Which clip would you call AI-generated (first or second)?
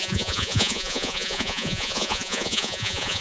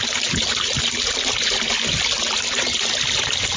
first